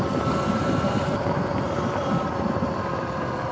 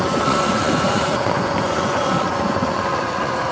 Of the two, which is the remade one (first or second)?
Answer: second